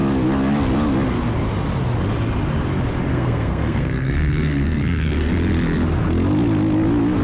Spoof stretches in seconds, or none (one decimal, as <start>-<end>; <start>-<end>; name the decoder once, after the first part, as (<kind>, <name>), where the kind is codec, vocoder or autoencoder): 3.1-5.3 (codec, SNAC)